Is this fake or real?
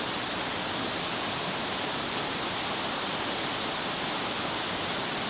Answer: real